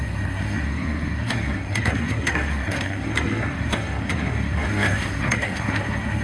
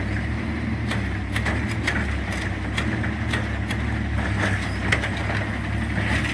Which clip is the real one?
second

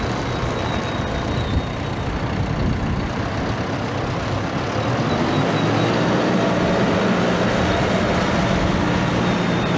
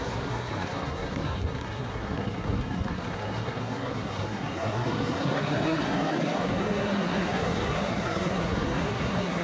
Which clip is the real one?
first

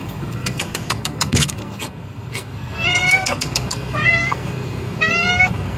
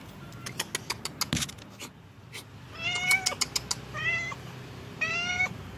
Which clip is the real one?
second